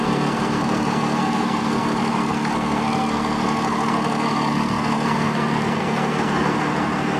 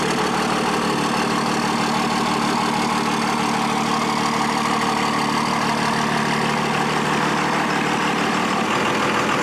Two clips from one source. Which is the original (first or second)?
second